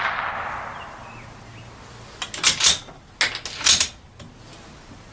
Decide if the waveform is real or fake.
real